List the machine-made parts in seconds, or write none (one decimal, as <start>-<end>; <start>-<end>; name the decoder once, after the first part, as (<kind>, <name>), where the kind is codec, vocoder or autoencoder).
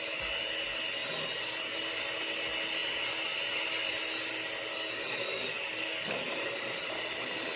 4.7-6.3 (codec, DAC)